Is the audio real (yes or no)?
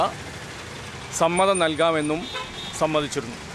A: yes